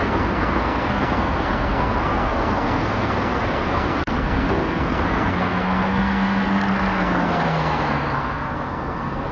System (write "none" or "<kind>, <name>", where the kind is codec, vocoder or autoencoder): codec, SNAC